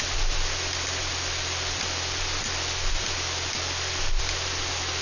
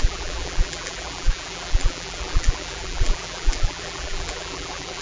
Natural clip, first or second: first